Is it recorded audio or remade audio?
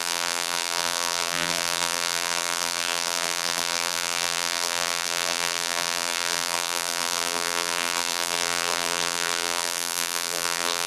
remade